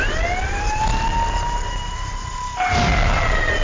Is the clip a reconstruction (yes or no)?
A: no